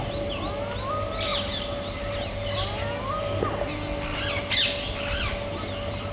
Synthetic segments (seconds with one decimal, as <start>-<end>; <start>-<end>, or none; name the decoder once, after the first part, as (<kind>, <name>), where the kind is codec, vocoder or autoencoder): none